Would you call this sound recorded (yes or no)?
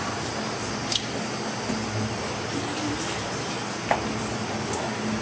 yes